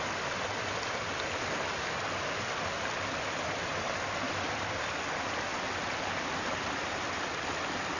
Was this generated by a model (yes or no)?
no